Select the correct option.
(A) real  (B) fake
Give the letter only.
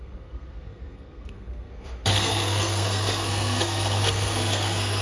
B